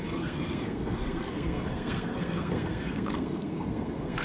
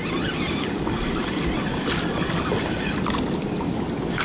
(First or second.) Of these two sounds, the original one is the second